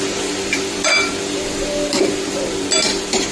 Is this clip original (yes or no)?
no